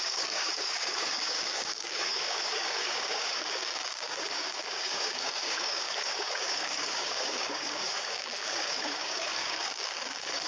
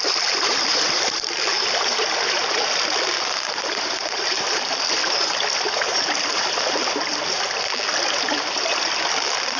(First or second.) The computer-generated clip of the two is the first